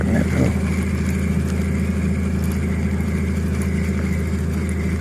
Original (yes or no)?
yes